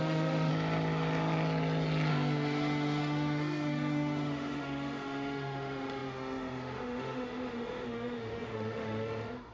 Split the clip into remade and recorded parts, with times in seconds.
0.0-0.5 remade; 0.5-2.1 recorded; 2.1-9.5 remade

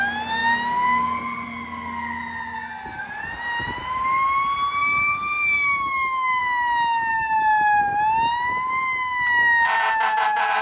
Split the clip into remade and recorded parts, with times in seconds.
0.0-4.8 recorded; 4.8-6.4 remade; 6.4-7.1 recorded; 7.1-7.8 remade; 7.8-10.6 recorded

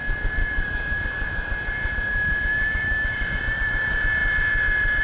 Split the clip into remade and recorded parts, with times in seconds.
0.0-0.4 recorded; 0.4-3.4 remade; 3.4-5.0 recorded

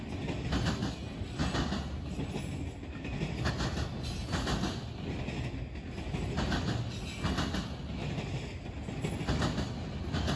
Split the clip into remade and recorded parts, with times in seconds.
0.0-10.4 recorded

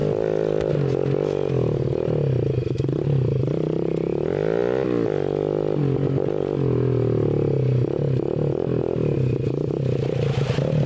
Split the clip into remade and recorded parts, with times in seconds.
0.0-10.9 recorded

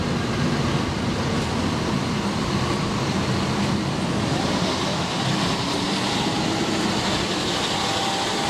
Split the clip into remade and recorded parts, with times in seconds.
0.0-4.9 recorded; 4.9-5.4 remade; 5.4-8.5 recorded

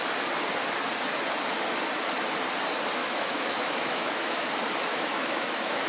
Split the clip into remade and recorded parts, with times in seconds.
0.0-3.0 recorded; 3.0-4.5 remade; 4.5-4.9 recorded; 4.9-5.9 remade